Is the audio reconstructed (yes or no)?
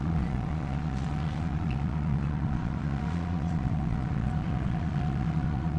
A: yes